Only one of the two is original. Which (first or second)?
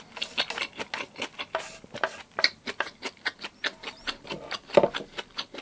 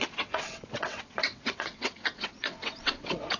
first